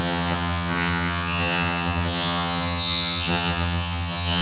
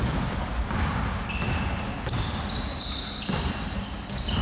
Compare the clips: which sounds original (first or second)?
second